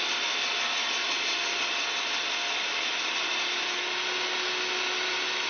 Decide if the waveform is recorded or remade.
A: recorded